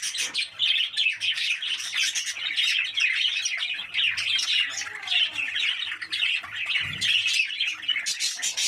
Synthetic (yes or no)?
no